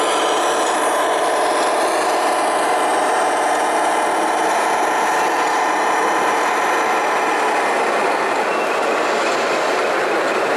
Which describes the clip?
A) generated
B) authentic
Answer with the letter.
B